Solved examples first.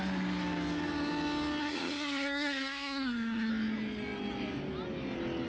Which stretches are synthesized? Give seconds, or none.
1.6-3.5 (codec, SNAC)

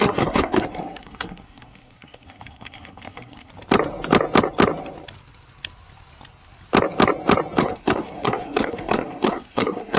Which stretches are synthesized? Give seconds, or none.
0.0-3.5 (codec, SNAC); 7.6-10.0

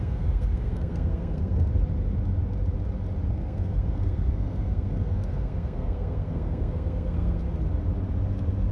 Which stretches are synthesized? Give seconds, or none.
0.0-1.7 (codec, SNAC); 3.3-7.4

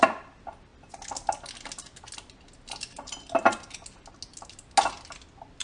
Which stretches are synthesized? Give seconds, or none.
none